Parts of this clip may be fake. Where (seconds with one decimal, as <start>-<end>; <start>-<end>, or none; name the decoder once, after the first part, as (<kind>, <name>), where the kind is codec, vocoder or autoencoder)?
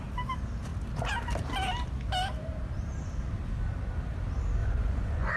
4.6-5.4 (vocoder, Vocos)